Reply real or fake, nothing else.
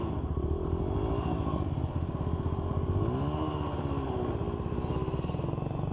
real